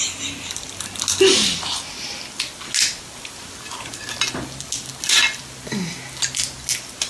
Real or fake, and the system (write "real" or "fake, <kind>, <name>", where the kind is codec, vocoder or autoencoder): real